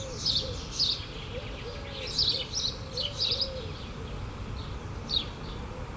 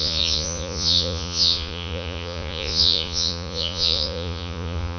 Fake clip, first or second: second